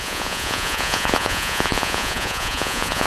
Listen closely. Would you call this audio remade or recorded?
remade